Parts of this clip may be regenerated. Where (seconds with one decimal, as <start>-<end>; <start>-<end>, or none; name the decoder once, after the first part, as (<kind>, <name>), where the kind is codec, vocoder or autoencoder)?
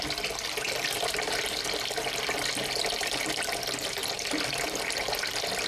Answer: none